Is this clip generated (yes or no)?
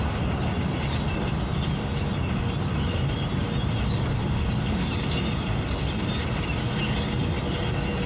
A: no